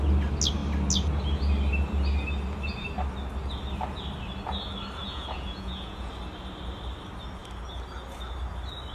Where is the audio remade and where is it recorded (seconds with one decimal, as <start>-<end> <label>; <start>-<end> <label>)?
0.0-5.0 recorded; 5.0-6.1 remade; 6.1-8.9 recorded